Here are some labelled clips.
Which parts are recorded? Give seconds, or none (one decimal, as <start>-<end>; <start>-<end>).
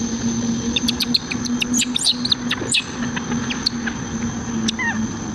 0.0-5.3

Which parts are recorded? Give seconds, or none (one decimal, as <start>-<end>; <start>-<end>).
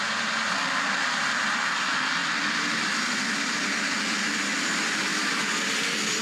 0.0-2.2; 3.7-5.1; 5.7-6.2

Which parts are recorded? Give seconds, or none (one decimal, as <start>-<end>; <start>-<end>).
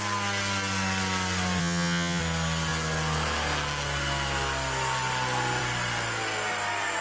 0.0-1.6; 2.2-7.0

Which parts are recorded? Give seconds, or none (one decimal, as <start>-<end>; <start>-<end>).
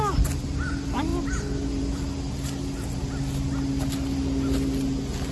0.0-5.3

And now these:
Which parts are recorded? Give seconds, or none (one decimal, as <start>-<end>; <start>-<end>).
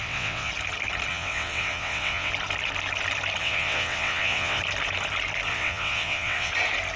0.5-1.1; 2.3-3.4; 4.6-5.5; 6.5-7.0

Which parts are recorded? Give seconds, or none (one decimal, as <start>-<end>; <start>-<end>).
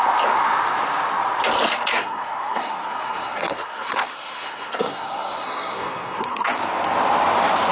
0.0-1.9; 6.5-7.7